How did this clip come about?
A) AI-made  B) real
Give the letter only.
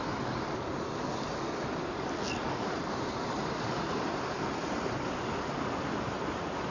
B